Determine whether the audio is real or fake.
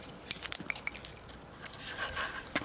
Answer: real